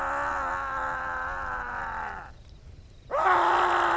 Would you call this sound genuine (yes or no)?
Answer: yes